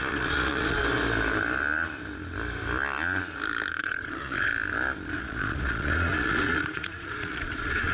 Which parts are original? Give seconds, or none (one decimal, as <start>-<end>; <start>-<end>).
0.8-3.8; 4.5-5.2

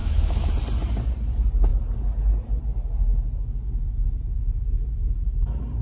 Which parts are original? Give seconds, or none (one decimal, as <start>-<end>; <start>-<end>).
0.5-5.8